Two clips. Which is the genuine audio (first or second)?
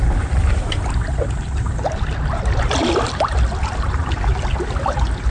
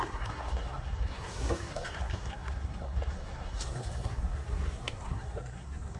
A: first